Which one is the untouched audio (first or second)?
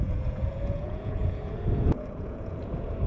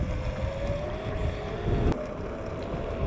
second